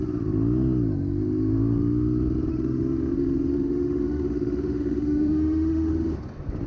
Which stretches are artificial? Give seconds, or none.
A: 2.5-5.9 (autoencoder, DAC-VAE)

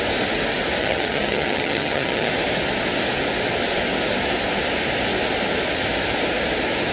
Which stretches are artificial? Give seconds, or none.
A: 0.8-2.3 (vocoder, HiFi-GAN)

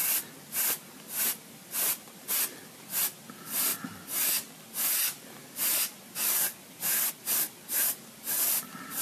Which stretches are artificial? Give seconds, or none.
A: none

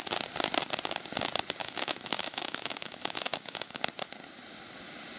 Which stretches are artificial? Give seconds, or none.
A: 1.6-3.8 (autoencoder, DAC-VAE)

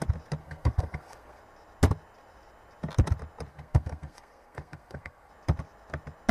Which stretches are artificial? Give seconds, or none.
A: 0.4-1.4 (codec, SNAC); 3.5-5.3

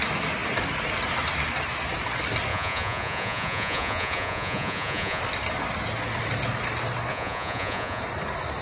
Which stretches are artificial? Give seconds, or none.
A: 2.5-5.2 (vocoder, Vocos); 7.1-8.0

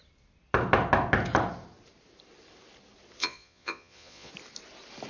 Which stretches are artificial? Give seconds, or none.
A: 3.2-4.3 (vocoder, Vocos)